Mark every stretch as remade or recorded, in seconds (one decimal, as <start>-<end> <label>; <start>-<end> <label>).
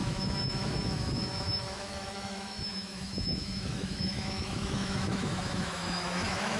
0.0-6.6 remade